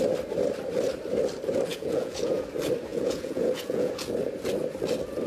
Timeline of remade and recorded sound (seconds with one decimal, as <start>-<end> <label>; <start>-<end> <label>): 0.0-1.7 recorded; 1.7-2.4 remade; 2.4-2.9 recorded; 2.9-3.9 remade; 3.9-5.3 recorded